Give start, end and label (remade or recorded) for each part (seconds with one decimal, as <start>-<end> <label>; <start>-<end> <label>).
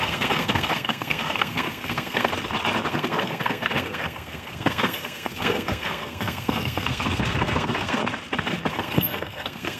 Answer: 0.0-2.3 remade; 2.3-2.9 recorded; 2.9-8.0 remade; 8.0-8.7 recorded; 8.7-9.8 remade